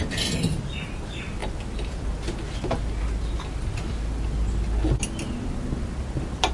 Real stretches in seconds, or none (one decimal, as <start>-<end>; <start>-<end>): 0.0-6.5